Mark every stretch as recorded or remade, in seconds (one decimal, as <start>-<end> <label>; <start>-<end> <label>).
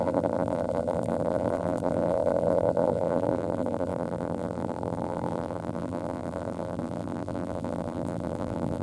0.0-8.8 remade